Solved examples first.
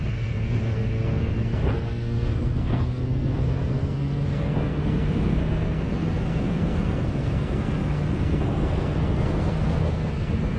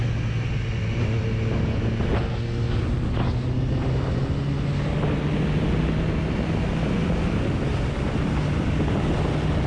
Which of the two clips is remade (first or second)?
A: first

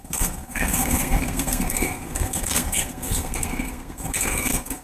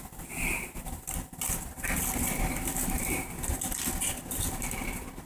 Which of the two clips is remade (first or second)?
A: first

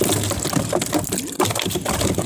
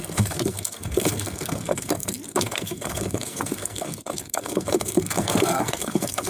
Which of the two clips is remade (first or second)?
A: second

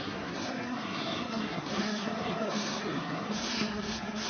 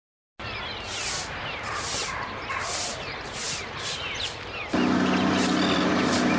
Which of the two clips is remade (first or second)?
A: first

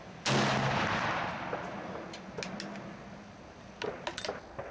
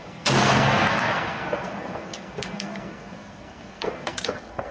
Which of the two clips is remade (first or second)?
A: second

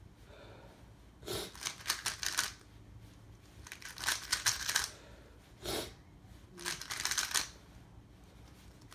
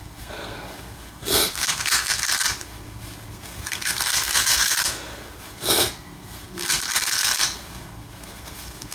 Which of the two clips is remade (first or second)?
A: second